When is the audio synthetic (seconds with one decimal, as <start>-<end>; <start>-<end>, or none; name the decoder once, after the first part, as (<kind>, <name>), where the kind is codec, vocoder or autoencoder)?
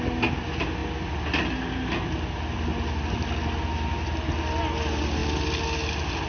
none